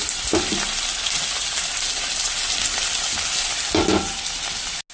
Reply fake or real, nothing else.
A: real